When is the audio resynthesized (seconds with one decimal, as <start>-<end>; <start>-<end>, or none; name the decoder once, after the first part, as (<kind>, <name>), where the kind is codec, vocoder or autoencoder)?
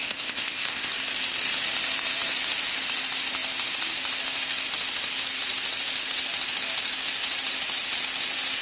0.0-0.9 (codec, ZipCodec)